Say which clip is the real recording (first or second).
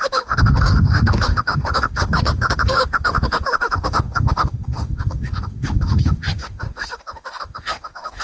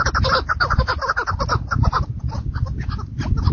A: second